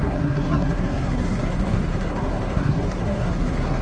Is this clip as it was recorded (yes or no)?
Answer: no